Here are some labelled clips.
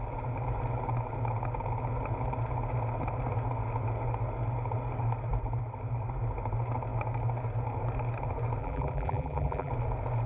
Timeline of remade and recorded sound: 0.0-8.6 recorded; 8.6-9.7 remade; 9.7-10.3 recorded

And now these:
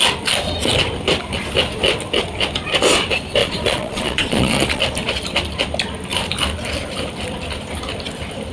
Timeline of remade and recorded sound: 0.0-3.4 recorded; 3.4-4.8 remade; 4.8-8.5 recorded

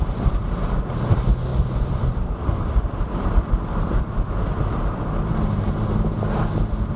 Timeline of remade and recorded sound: 0.0-1.5 recorded; 1.5-5.7 remade; 5.7-7.0 recorded

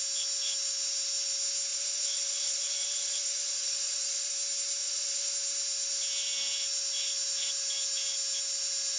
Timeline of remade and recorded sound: 0.0-1.7 recorded; 1.7-4.3 remade; 4.3-4.8 recorded; 4.8-5.3 remade; 5.3-9.0 recorded